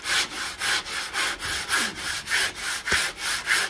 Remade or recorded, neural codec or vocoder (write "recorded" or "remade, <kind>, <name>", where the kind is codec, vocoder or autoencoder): recorded